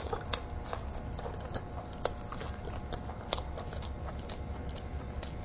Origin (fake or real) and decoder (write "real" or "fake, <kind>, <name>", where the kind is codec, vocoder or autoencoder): real